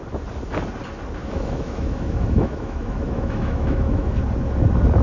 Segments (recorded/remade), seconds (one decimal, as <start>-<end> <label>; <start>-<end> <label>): 0.0-1.2 recorded; 1.2-4.2 remade; 4.2-5.0 recorded